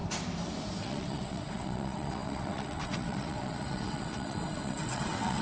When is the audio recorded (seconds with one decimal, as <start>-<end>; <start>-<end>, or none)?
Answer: 0.0-0.8